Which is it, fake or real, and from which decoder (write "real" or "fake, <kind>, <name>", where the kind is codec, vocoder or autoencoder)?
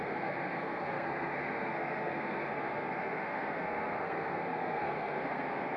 fake, codec, SNAC